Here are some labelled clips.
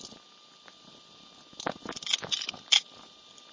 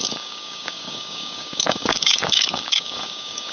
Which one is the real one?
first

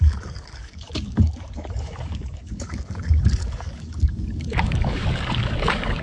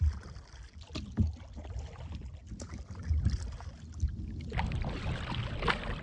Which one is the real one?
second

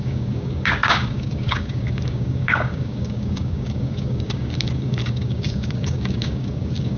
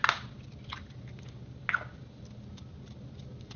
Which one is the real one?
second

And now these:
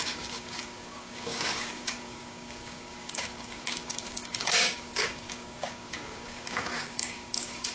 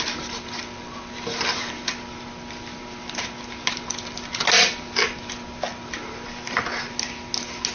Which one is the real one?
second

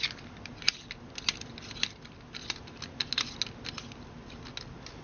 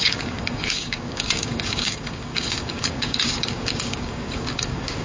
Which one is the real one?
first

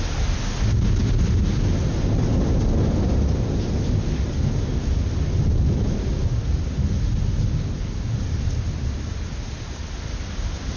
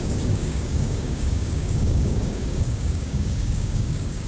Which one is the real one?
first